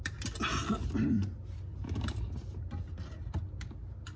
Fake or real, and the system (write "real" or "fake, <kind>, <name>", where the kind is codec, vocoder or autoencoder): real